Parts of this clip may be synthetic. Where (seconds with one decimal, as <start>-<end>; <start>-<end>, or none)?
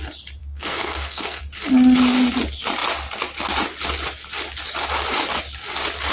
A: 0.4-1.4